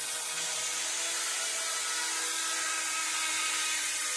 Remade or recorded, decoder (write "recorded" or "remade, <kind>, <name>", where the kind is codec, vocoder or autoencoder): recorded